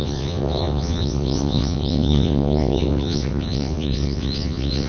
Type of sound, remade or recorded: remade